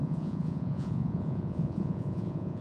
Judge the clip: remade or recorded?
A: remade